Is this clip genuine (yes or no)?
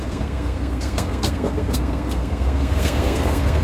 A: no